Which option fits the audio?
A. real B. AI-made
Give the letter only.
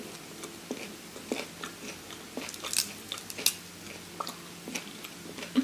A